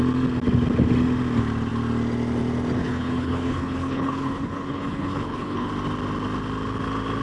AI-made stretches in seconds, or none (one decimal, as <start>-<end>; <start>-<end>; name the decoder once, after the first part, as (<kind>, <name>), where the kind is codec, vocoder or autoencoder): 2.8-5.7 (codec, HILCodec)